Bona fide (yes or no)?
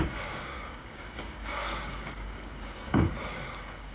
no